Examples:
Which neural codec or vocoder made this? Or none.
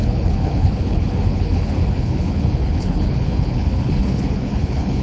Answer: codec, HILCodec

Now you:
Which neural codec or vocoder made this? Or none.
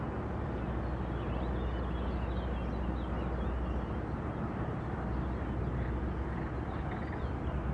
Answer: none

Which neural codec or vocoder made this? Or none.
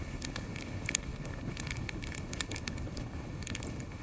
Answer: codec, HILCodec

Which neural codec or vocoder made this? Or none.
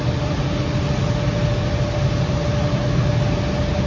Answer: none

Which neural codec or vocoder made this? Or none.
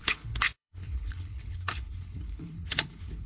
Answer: codec, HILCodec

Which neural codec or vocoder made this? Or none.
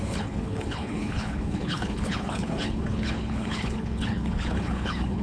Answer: codec, HILCodec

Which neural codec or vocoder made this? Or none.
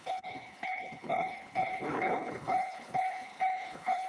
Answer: codec, HILCodec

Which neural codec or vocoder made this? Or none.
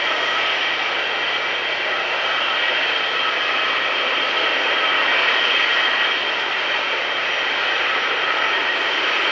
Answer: none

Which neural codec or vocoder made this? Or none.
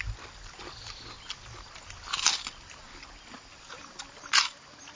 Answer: none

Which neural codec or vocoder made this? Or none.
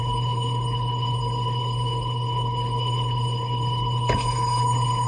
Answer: codec, HILCodec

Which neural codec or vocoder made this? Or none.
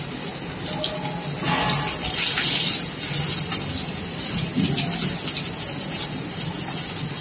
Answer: none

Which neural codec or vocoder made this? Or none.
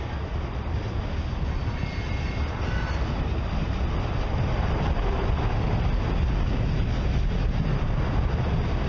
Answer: none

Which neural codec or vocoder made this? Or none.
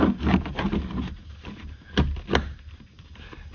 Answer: none